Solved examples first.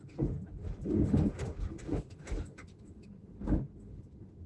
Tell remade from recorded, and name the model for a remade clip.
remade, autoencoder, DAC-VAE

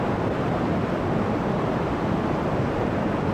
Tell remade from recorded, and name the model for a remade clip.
recorded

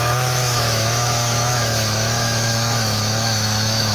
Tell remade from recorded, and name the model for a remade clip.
remade, autoencoder, DAC-VAE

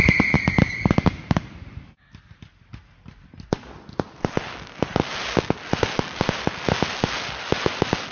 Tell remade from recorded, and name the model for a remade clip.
recorded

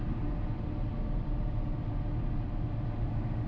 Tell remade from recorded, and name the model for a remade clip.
recorded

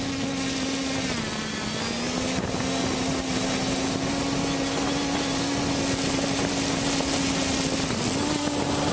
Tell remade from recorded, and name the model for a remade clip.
recorded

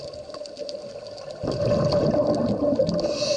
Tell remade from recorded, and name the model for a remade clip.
recorded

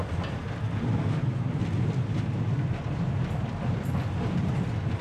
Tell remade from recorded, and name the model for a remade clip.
recorded